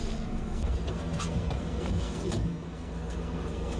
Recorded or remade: remade